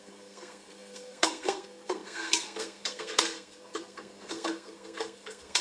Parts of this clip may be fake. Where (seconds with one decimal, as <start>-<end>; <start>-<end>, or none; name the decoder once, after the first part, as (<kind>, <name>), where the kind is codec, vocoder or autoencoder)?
0.0-5.6 (codec, SNAC)